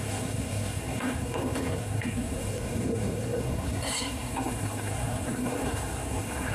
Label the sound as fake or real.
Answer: fake